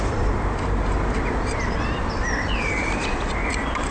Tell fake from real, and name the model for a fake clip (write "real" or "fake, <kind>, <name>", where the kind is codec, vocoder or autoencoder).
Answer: fake, vocoder, BigVGAN v2